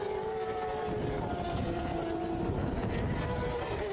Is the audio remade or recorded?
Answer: recorded